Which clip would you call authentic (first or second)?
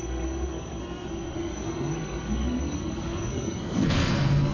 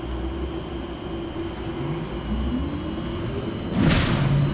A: second